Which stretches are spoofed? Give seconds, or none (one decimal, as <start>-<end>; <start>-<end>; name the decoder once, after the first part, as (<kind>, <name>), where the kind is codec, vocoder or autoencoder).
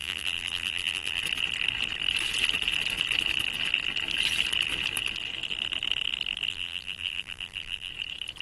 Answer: 0.0-1.2 (vocoder, BigVGAN v2); 6.5-7.9